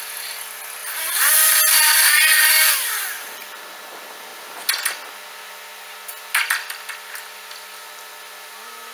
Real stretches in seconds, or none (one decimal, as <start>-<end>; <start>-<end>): 0.0-0.8; 3.6-6.4; 7.9-8.9